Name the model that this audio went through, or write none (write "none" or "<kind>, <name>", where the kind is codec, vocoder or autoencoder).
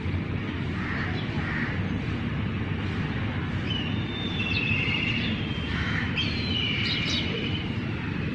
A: vocoder, BigVGAN v2